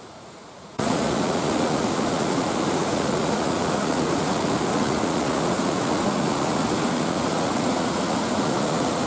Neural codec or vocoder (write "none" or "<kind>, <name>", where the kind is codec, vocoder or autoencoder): vocoder, Vocos